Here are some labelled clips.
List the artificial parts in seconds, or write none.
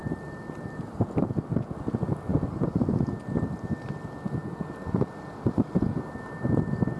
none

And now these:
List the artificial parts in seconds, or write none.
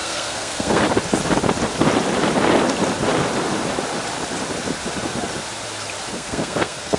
0.0-0.8 (codec, SNAC); 6.1-7.0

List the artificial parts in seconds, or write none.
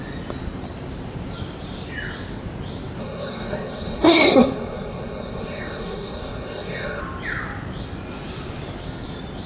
3.0-7.0 (codec, SNAC)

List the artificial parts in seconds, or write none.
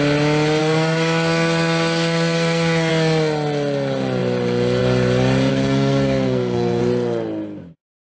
0.6-2.9 (codec, SNAC); 5.5-6.8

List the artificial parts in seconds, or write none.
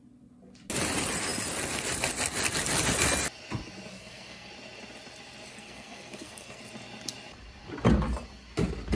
3.9-4.5 (codec, SNAC); 5.5-6.6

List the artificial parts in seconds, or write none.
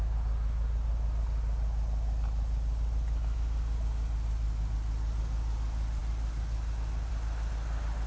none